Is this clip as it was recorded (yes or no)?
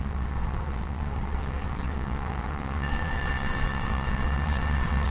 no